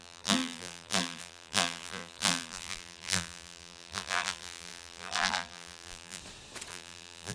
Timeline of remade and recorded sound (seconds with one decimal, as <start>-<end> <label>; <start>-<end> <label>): 0.0-6.2 remade; 6.2-6.7 recorded; 6.7-7.3 remade